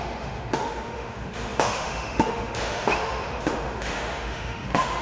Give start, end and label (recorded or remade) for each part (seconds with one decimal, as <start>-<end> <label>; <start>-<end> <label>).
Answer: 0.0-5.0 remade